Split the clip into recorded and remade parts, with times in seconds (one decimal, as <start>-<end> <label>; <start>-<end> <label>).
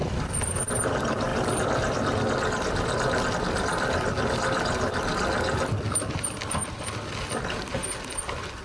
0.0-8.6 recorded